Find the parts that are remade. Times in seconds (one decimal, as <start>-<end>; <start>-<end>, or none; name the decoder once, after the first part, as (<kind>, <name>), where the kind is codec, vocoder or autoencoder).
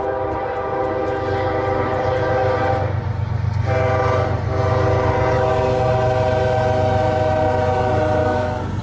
8.2-8.8 (codec, DAC)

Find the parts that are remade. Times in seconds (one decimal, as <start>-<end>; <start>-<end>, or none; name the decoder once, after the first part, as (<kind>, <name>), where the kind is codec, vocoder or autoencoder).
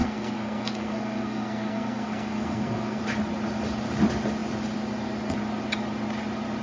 0.0-3.0 (codec, SNAC)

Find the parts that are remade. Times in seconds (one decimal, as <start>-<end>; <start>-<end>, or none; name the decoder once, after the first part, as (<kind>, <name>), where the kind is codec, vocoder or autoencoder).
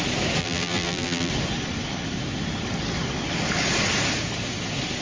0.4-1.3 (vocoder, BigVGAN v2)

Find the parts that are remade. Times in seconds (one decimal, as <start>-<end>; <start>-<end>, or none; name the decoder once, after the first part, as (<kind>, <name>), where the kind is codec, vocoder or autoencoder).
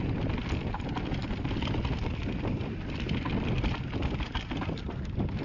none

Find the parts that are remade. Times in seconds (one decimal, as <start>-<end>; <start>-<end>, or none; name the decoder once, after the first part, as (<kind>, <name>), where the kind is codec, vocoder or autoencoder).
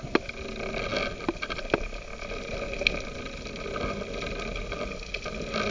none